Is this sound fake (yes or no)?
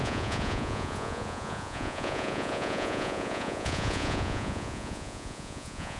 yes